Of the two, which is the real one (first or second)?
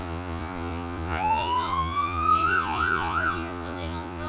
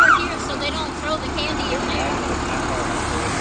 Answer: second